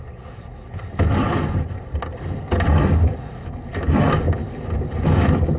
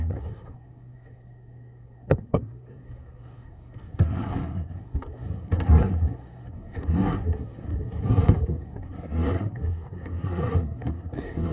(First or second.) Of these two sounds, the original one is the first